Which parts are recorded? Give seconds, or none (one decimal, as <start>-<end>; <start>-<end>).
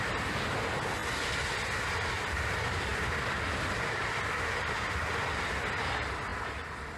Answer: 0.0-7.0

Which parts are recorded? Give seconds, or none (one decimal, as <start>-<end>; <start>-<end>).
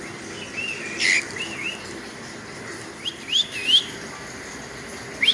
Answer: 0.0-5.3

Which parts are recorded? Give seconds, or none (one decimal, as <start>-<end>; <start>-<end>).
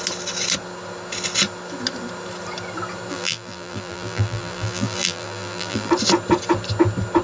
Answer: 0.0-3.1; 5.9-7.2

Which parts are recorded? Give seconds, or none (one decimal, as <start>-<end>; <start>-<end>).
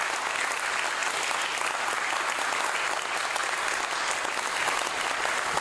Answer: 0.0-5.6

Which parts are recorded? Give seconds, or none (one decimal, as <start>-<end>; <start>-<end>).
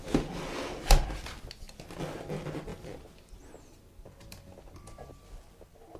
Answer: 0.0-6.0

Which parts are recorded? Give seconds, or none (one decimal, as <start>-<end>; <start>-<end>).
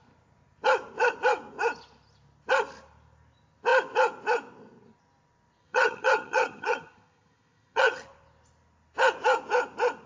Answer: 0.0-5.6; 8.0-10.1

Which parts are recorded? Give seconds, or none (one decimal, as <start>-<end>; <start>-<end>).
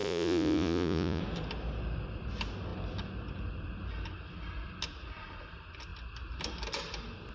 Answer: 1.2-7.3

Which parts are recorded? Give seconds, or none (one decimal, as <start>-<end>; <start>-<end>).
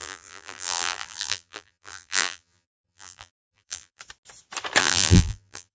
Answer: 4.0-4.8